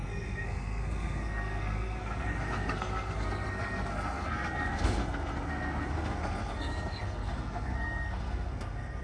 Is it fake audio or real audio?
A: fake